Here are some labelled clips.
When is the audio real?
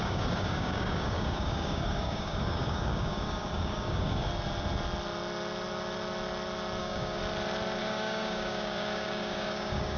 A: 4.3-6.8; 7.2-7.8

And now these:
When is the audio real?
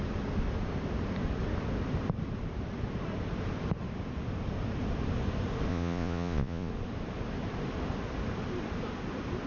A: 0.0-5.7; 6.7-9.5